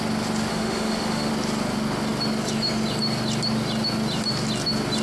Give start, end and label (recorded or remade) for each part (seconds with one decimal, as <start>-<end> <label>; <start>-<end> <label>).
0.0-0.5 recorded; 0.5-1.3 remade; 1.3-5.0 recorded